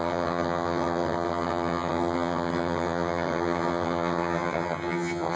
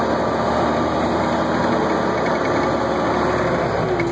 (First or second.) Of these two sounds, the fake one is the first